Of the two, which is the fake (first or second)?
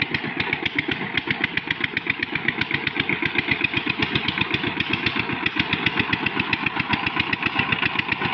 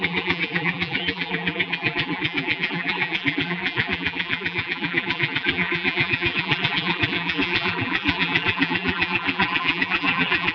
second